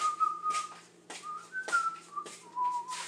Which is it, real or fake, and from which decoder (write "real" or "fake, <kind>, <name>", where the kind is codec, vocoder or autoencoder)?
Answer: fake, vocoder, BigVGAN v2